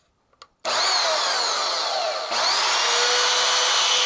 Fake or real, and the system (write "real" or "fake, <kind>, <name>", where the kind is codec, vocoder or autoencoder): real